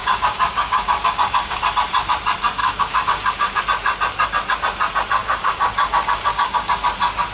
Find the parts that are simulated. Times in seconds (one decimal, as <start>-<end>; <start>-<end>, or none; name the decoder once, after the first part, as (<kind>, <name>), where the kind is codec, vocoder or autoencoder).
0.0-1.6 (codec, DAC); 2.6-3.6; 5.2-6.7